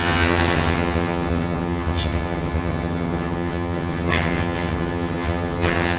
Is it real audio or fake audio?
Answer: fake